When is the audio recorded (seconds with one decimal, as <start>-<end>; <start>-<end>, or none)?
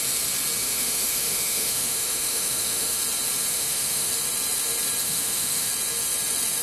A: 0.0-0.6; 3.0-3.5; 4.1-5.0; 5.7-6.6